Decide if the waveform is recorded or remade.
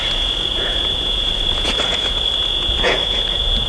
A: remade